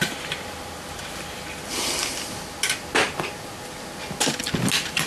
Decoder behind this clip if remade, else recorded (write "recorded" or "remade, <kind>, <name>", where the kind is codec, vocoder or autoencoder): recorded